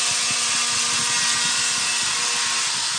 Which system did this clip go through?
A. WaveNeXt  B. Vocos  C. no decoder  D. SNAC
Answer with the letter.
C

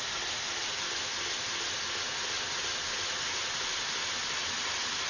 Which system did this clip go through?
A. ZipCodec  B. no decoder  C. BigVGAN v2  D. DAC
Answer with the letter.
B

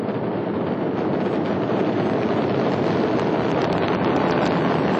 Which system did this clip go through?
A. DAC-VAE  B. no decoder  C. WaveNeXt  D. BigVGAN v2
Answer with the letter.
D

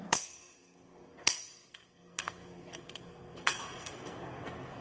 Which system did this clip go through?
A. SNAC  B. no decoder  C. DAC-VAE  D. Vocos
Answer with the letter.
A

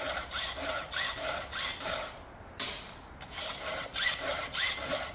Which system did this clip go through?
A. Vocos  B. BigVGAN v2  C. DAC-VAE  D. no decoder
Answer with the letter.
D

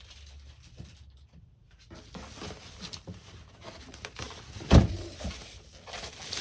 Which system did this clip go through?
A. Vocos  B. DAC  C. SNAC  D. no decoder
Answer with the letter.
D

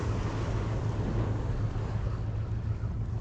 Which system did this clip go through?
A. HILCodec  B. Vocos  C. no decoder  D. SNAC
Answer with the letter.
C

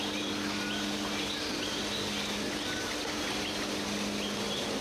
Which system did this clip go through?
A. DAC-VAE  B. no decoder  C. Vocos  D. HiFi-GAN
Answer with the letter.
B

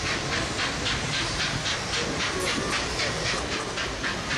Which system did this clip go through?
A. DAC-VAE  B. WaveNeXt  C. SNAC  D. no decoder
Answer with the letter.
D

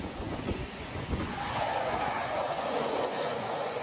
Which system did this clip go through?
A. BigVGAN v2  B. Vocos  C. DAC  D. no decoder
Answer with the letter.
B